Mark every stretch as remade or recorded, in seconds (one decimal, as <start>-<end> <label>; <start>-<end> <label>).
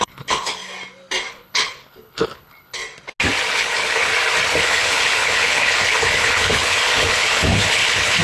0.0-0.6 remade; 0.6-1.3 recorded; 1.3-2.8 remade; 2.8-3.5 recorded; 3.5-4.1 remade; 4.1-4.6 recorded; 4.6-8.2 remade